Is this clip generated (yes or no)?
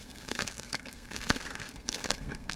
yes